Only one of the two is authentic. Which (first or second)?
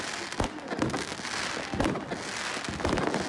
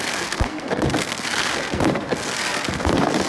first